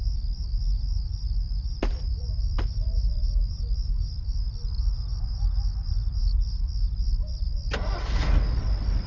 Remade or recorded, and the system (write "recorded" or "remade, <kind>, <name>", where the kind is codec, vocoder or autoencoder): recorded